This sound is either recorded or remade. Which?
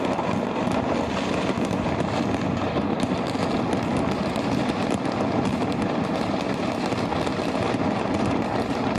recorded